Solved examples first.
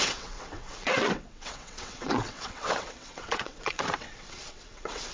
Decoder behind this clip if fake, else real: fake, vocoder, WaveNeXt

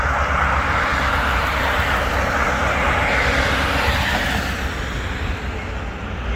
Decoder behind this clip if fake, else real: real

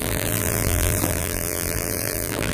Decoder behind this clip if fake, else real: fake, vocoder, BigVGAN v2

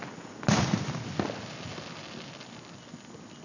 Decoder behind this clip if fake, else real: real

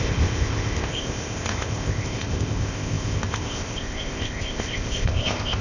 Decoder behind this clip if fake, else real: fake, codec, ZipCodec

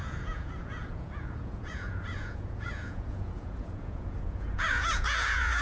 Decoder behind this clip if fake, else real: fake, vocoder, Vocos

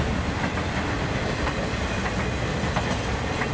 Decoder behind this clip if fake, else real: real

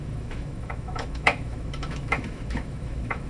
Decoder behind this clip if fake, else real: fake, autoencoder, DAC-VAE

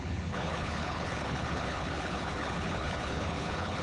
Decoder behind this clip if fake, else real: fake, codec, HILCodec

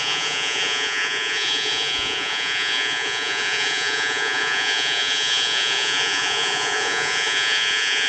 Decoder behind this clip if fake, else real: fake, vocoder, Vocos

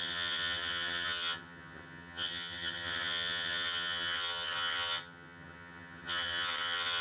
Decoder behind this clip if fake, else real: fake, vocoder, HiFi-GAN